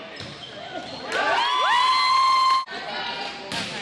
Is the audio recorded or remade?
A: recorded